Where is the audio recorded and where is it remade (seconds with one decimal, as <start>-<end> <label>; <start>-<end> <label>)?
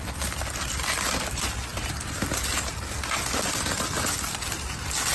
0.0-5.1 recorded